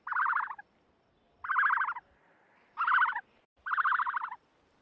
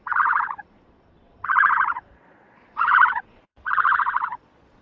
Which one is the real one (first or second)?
first